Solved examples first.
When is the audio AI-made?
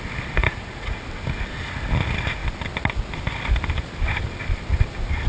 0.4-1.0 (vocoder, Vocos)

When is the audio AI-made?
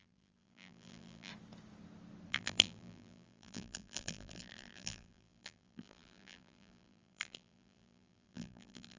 0.0-1.3 (vocoder, BigVGAN v2); 2.3-9.0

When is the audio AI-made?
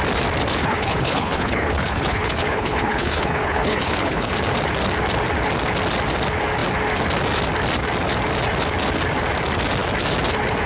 0.6-4.3 (codec, HILCodec)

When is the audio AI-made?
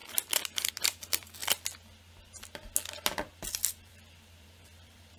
0.7-1.4 (vocoder, BigVGAN v2); 3.8-5.2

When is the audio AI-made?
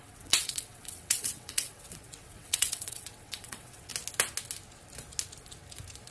0.0-3.9 (vocoder, WaveNeXt)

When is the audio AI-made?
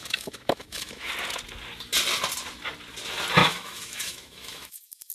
0.0-1.1 (autoencoder, DAC-VAE); 3.4-5.1